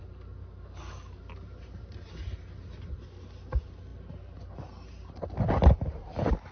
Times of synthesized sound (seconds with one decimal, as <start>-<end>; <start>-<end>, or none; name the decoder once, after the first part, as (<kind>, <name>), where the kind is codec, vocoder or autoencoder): 0.4-1.2 (codec, DAC)